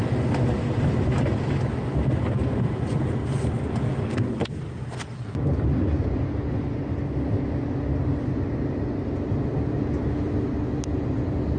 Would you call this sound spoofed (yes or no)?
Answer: no